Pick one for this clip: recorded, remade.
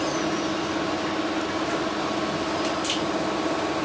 recorded